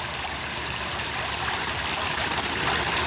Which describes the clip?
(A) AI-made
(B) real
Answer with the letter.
B